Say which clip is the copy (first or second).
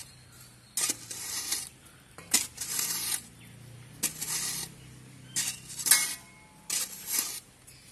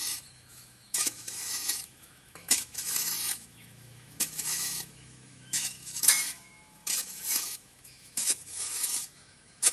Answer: second